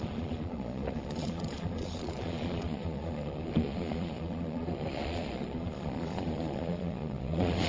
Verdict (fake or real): fake